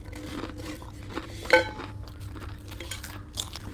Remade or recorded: recorded